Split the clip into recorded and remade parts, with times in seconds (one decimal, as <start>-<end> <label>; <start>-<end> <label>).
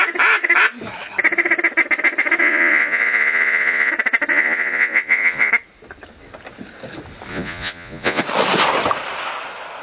0.0-2.4 recorded; 2.4-3.9 remade; 3.9-4.3 recorded; 4.3-5.5 remade; 5.5-7.3 recorded; 7.3-8.2 remade; 8.2-9.8 recorded